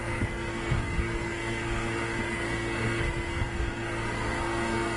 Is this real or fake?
fake